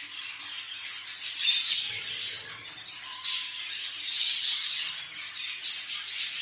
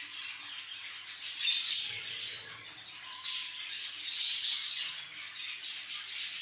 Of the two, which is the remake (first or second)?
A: first